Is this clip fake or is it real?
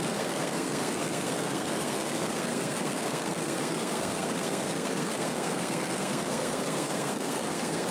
fake